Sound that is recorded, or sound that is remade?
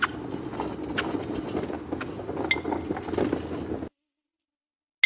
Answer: recorded